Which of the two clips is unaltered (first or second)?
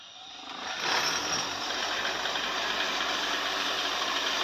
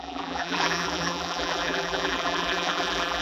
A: first